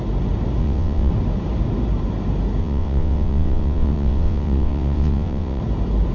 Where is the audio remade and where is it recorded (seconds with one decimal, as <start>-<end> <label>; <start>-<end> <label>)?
0.0-0.6 recorded; 0.6-1.1 remade; 1.1-2.6 recorded; 2.6-5.6 remade; 5.6-6.1 recorded